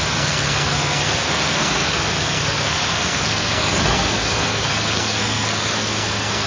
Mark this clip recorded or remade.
remade